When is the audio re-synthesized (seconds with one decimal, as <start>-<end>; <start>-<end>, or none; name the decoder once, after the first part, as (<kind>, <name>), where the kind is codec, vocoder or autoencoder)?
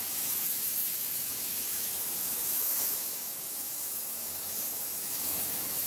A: 0.0-5.9 (autoencoder, DAC-VAE)